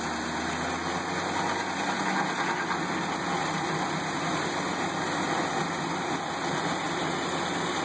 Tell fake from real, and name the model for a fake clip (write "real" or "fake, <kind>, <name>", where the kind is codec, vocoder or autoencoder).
real